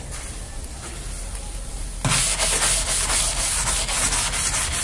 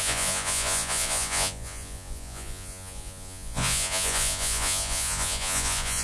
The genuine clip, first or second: first